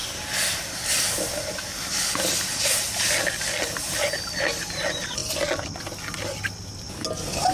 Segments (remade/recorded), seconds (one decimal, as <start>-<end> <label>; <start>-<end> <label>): 0.0-7.5 recorded